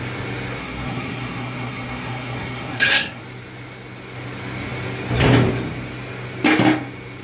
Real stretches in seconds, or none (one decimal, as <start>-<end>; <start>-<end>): 0.0-0.6; 3.2-7.2